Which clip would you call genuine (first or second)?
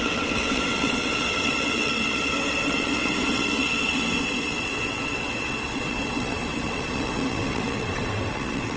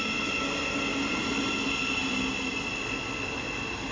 second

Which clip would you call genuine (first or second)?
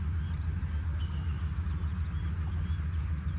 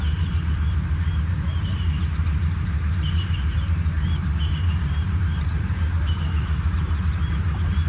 first